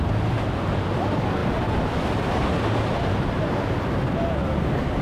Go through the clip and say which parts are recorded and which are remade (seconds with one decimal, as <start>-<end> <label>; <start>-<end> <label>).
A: 0.0-5.0 recorded